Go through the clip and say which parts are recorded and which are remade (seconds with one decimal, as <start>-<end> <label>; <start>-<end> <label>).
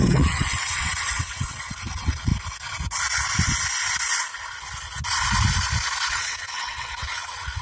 0.0-2.3 remade; 2.3-6.1 recorded; 6.1-7.6 remade